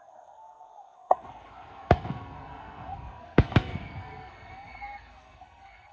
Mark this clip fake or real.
fake